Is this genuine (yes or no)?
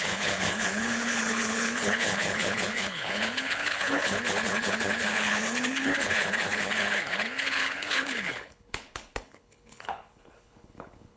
no